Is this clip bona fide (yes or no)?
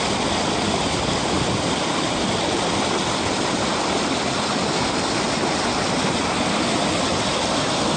yes